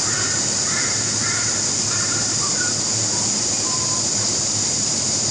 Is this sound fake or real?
real